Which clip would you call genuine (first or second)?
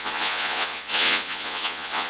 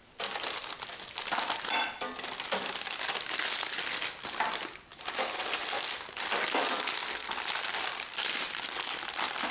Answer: second